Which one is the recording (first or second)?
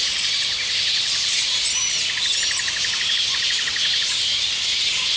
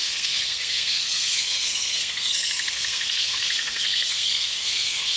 first